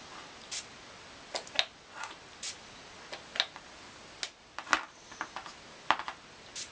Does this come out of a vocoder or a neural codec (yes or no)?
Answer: no